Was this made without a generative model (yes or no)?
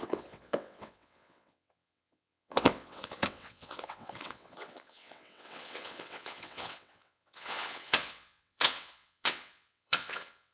no